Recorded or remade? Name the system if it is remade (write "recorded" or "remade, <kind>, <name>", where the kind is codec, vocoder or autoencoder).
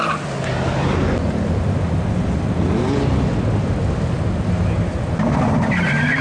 recorded